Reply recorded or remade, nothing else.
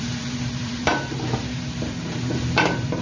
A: remade